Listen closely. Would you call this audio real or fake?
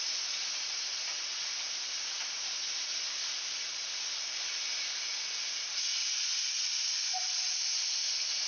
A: real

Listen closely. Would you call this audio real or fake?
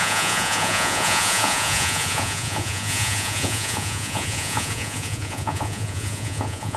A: fake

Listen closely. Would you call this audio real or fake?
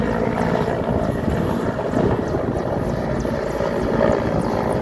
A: real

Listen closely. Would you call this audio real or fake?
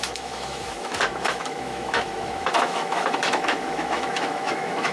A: fake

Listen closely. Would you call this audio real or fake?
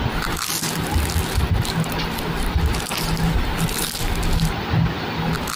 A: real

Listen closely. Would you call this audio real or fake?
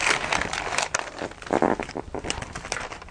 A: real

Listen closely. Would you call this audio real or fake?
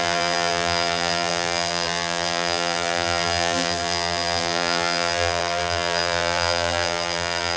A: fake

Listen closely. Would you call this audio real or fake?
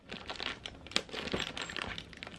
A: real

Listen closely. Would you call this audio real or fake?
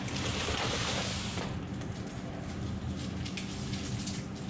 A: real